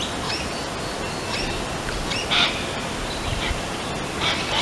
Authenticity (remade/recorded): recorded